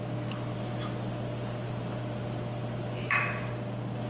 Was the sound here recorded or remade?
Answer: recorded